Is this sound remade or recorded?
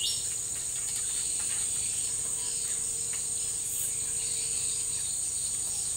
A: recorded